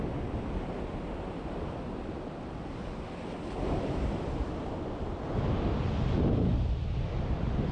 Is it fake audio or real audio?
real